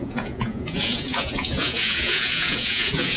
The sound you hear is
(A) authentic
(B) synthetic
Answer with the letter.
B